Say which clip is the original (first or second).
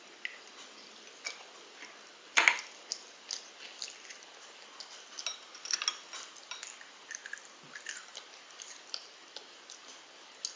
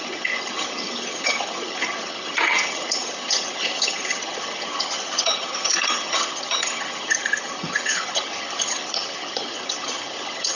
first